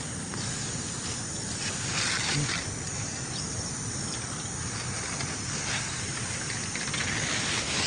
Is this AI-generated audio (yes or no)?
no